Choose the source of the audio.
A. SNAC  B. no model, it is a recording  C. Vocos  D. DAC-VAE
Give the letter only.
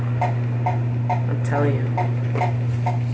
B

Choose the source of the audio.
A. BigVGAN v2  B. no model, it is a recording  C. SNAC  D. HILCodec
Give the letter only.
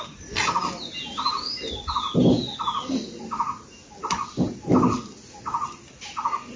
B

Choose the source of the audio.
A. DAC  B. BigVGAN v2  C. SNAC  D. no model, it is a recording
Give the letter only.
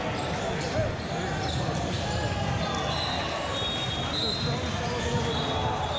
D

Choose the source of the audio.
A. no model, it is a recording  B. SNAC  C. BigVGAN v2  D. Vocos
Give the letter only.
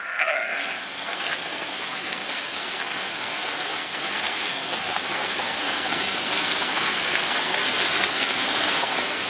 B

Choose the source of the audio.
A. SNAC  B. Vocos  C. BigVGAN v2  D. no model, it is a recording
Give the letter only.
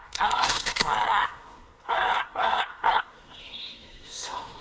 A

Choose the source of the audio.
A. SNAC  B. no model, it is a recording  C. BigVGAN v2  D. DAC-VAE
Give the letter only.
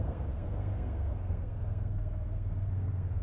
A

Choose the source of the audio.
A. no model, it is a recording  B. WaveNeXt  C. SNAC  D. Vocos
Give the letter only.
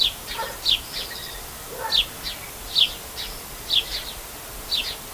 A